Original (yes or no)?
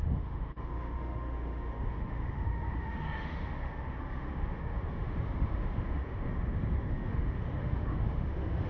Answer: no